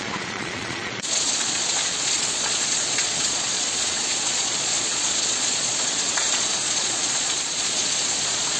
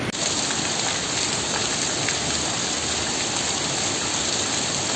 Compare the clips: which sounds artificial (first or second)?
first